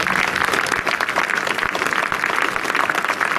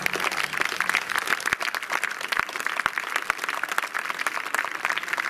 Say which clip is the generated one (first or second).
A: second